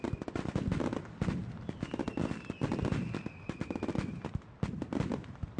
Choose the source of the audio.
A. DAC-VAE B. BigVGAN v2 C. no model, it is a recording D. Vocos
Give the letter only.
C